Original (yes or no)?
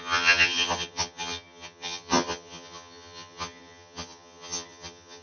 no